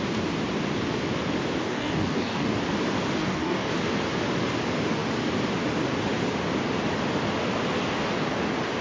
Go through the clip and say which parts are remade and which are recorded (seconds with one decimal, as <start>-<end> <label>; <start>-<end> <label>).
0.0-1.6 recorded; 1.6-2.5 remade; 2.5-3.2 recorded; 3.2-3.7 remade; 3.7-8.8 recorded